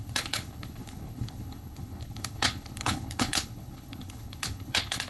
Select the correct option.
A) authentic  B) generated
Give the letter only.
B